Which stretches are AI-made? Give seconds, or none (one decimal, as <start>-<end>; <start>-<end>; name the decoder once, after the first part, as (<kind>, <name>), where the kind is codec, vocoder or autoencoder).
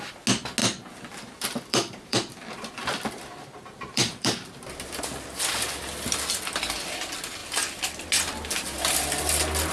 0.6-5.0 (vocoder, BigVGAN v2)